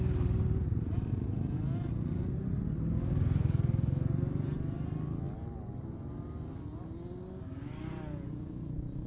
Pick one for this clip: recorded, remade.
recorded